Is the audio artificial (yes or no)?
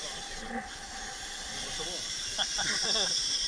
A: no